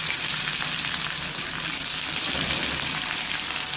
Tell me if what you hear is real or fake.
real